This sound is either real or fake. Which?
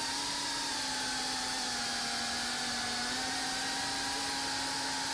fake